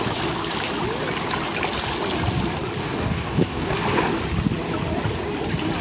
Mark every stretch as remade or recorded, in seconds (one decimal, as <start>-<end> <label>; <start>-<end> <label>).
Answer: 0.0-2.8 recorded; 2.8-3.7 remade; 3.7-5.8 recorded